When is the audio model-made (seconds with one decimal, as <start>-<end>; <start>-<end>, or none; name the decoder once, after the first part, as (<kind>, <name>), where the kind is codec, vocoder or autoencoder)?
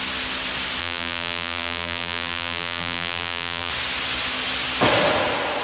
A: 0.8-3.7 (vocoder, BigVGAN v2)